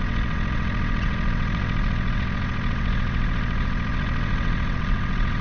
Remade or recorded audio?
remade